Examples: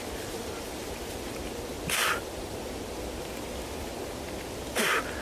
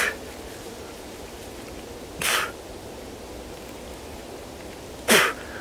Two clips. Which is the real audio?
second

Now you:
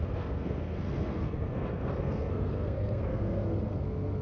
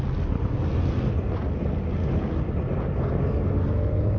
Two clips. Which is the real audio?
second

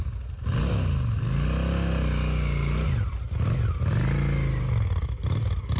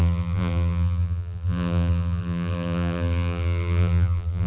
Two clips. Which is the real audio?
first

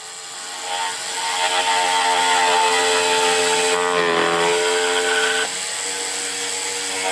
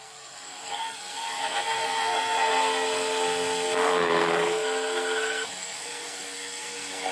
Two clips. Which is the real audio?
first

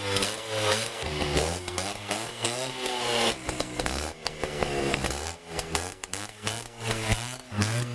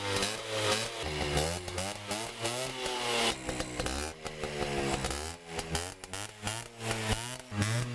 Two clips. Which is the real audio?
second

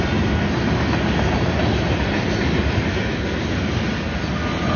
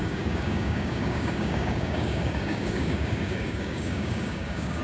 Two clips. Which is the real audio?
first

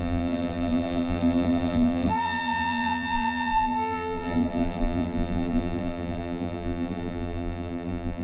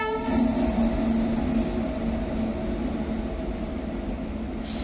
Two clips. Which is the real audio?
second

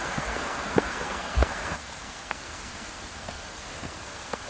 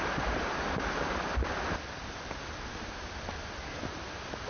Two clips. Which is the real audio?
second